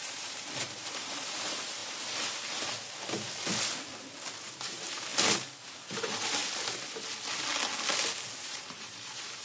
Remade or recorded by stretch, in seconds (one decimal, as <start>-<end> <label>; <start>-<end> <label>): 0.0-1.8 remade; 1.8-4.4 recorded; 4.4-5.1 remade; 5.1-6.0 recorded; 6.0-6.4 remade; 6.4-8.4 recorded; 8.4-9.4 remade